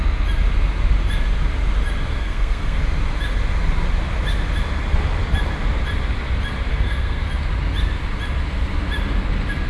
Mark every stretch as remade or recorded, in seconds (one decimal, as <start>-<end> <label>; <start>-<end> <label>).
0.0-2.1 recorded; 2.1-2.8 remade; 2.8-6.7 recorded; 6.7-7.3 remade; 7.3-9.7 recorded